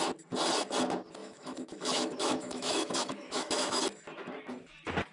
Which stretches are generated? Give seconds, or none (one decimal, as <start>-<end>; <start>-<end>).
1.2-3.8